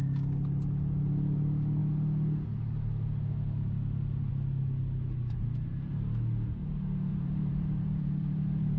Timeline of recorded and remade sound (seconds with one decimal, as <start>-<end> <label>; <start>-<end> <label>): 0.0-7.1 recorded; 7.1-8.8 remade